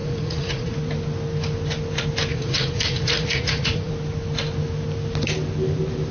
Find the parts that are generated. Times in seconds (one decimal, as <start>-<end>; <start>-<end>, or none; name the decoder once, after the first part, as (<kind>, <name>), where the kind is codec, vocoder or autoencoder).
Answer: 0.0-0.7 (vocoder, Vocos); 2.3-3.9